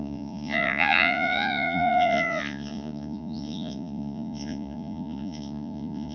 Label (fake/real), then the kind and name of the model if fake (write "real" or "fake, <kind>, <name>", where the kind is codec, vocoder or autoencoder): fake, vocoder, Vocos